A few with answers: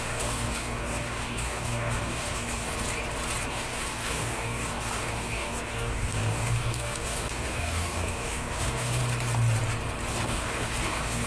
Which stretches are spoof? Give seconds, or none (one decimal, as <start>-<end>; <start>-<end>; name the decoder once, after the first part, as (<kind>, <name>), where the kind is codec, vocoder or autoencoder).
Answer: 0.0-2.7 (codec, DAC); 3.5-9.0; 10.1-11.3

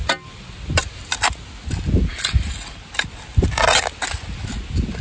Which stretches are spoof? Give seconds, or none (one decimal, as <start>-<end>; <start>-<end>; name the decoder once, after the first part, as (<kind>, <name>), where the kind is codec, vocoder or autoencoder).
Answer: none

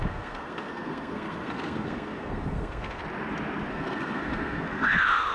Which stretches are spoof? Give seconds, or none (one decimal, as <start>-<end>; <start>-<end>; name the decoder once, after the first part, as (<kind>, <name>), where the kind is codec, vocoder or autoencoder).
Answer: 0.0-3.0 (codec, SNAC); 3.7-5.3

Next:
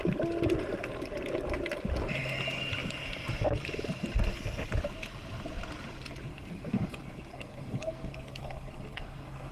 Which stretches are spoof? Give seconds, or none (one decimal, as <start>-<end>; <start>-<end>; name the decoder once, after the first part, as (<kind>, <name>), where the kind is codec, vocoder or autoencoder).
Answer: 6.3-9.5 (codec, SNAC)

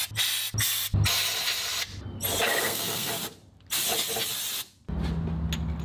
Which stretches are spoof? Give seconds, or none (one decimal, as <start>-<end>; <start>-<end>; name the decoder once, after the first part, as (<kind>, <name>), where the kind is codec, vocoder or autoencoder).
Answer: 2.6-3.1 (codec, SNAC)